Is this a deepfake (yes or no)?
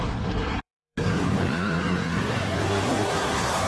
yes